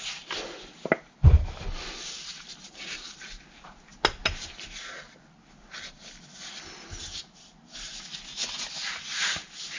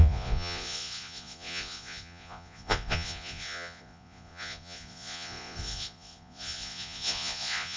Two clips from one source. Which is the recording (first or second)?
first